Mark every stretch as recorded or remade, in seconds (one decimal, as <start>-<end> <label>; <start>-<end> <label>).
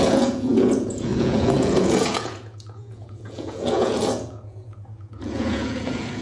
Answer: 0.0-6.2 remade